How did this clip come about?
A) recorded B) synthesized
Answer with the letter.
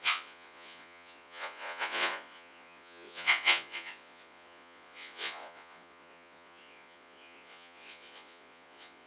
B